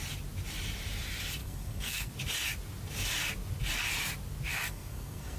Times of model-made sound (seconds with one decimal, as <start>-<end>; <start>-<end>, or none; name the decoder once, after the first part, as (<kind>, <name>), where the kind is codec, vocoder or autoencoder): 1.4-2.1 (codec, SNAC); 4.5-5.4